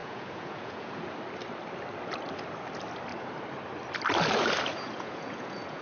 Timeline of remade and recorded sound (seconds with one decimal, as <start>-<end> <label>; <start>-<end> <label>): 0.0-1.0 remade; 1.0-4.7 recorded; 4.7-5.8 remade